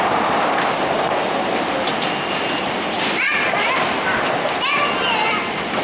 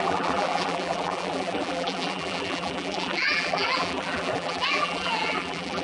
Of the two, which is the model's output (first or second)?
second